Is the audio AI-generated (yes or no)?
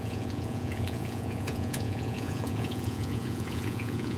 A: yes